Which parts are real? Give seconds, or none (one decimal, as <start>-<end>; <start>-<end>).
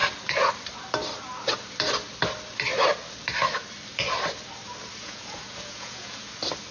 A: 0.0-5.0; 6.3-6.7